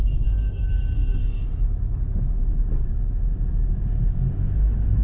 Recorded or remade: recorded